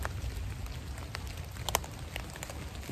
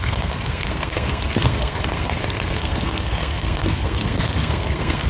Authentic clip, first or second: first